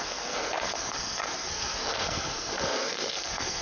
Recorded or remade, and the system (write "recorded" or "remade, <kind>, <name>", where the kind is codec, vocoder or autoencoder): remade, codec, SNAC